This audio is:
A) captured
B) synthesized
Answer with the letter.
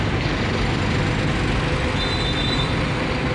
A